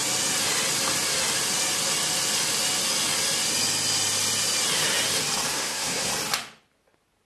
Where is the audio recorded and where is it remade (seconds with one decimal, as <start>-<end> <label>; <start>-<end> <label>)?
0.0-5.5 recorded; 5.5-6.1 remade; 6.1-7.3 recorded